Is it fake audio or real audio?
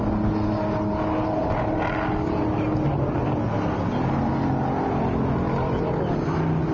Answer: real